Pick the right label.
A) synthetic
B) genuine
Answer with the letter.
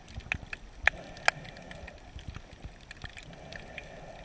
B